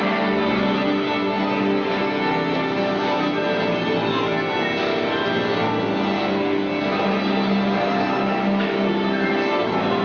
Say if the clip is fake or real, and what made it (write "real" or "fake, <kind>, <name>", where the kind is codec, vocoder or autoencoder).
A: real